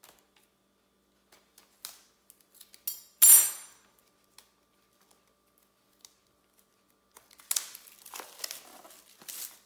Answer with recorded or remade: recorded